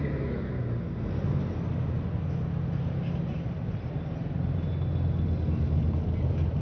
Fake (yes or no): no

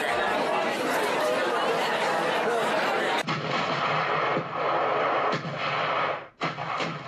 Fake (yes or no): no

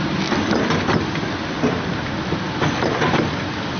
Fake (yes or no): yes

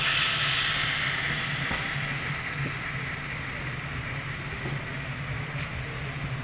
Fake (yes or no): no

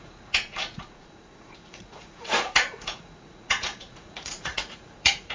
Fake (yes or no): yes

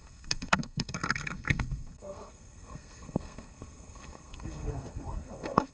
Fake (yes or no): yes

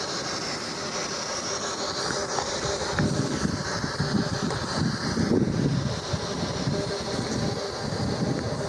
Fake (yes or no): no